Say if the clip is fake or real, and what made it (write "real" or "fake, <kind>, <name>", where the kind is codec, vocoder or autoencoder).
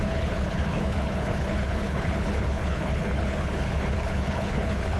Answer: fake, codec, HILCodec